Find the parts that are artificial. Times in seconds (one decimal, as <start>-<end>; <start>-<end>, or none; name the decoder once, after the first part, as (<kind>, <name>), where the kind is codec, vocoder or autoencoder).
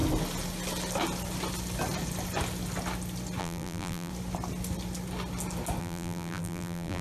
3.4-4.1 (vocoder, BigVGAN v2); 5.8-7.0